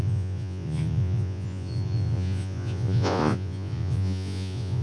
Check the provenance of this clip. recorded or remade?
remade